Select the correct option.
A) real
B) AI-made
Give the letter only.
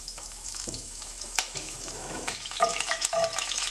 B